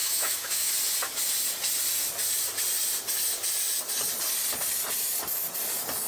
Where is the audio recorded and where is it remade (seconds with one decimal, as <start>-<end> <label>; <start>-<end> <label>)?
0.0-0.7 remade; 0.7-6.1 recorded